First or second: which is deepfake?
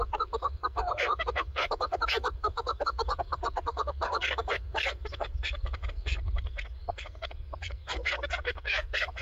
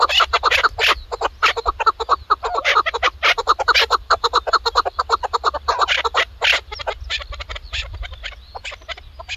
first